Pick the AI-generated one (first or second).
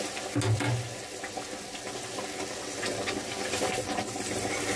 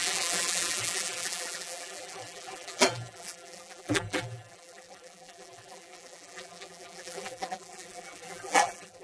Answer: second